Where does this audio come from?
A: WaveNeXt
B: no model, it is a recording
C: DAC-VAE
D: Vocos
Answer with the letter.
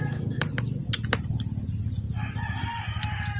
B